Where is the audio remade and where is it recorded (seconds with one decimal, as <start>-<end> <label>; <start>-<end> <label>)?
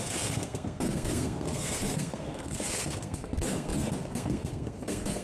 0.0-5.2 remade